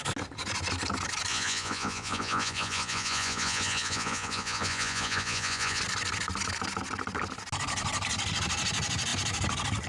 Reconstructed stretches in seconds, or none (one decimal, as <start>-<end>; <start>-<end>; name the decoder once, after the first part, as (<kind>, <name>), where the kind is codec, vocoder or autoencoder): 1.3-5.8 (vocoder, Vocos)